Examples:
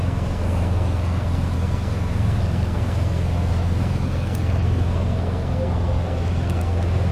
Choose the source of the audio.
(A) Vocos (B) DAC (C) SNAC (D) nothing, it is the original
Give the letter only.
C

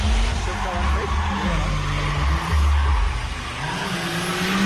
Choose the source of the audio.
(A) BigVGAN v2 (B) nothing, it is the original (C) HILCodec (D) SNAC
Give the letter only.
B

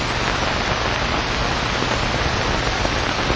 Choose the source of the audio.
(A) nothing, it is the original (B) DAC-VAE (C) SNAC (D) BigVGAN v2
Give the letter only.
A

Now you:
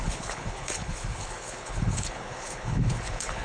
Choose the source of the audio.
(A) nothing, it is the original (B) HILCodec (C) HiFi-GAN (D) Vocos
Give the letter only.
B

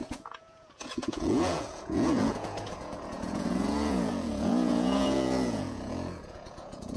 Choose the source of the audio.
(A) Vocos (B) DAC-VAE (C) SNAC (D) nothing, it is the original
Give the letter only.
A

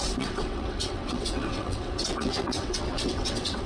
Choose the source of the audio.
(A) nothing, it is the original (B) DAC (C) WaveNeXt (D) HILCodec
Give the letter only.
C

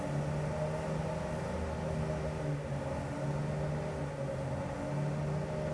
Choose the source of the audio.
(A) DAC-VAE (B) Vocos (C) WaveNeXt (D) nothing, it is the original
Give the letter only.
D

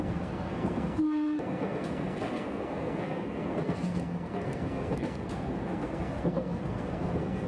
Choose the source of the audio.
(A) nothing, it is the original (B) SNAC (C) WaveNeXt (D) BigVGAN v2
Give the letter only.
B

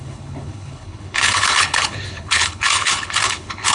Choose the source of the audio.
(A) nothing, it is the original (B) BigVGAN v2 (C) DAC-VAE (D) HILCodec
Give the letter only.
D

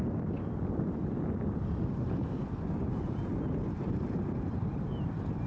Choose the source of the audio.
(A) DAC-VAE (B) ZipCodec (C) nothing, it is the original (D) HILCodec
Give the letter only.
C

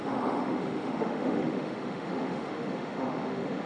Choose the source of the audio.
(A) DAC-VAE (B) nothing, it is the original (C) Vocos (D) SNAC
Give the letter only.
A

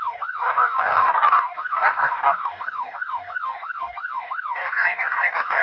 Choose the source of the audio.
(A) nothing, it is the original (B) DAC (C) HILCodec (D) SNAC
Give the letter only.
B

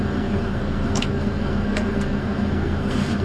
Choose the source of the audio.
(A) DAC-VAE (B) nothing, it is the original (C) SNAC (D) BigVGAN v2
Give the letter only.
C